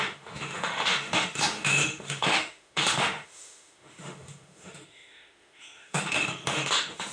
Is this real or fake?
fake